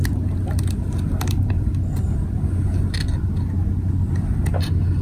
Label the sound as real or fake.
real